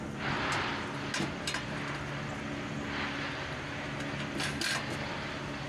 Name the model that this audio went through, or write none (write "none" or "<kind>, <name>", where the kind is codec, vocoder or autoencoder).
none